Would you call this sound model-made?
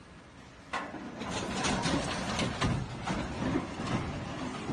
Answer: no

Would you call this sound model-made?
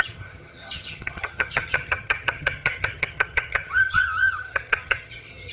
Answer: yes